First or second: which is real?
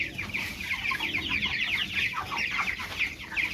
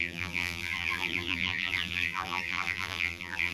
first